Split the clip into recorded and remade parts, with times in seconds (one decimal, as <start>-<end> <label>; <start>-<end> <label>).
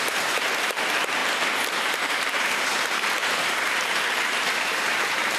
0.0-1.2 remade; 1.2-1.8 recorded; 1.8-5.4 remade